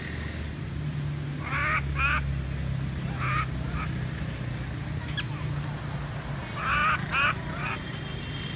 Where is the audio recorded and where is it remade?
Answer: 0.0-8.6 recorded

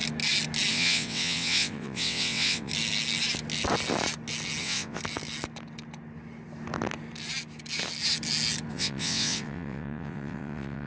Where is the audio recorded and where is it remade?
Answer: 0.0-0.7 recorded; 0.7-2.7 remade; 2.7-4.6 recorded; 4.6-5.0 remade; 5.0-8.7 recorded; 8.7-10.9 remade

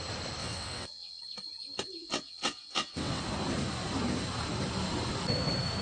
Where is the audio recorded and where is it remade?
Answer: 0.0-0.4 recorded; 0.4-1.2 remade; 1.2-2.0 recorded; 2.0-3.2 remade; 3.2-5.8 recorded

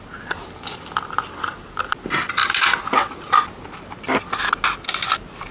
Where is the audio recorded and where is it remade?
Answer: 0.0-5.5 recorded

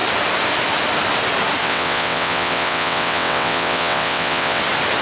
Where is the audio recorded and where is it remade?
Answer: 0.0-1.6 recorded; 1.6-4.6 remade; 4.6-5.0 recorded

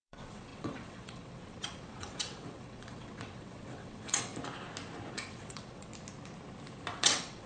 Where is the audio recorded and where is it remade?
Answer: 0.0-4.3 remade; 4.3-5.1 recorded; 5.1-5.9 remade; 5.9-6.9 recorded; 6.9-7.5 remade

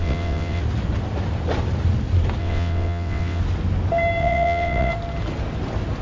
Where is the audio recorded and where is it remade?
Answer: 0.0-0.6 remade; 0.6-2.4 recorded; 2.4-3.4 remade; 3.4-4.2 recorded; 4.2-4.9 remade; 4.9-6.0 recorded

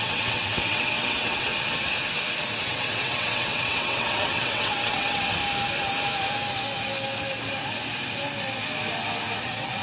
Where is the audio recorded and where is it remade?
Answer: 0.0-1.5 remade; 1.5-2.6 recorded; 2.6-5.4 remade; 5.4-9.4 recorded; 9.4-9.8 remade